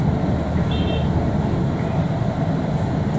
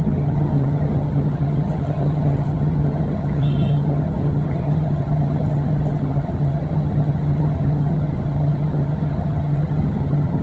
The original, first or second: first